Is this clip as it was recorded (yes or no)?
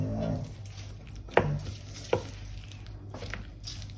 yes